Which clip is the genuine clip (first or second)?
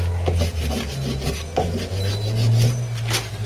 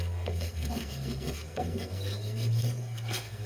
first